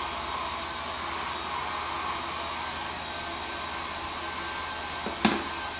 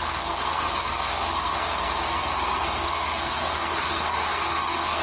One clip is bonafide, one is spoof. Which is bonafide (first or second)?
first